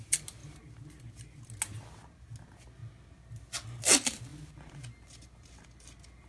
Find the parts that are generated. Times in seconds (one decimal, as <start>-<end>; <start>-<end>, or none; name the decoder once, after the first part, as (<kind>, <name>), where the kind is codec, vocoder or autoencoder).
4.3-4.8 (vocoder, BigVGAN v2)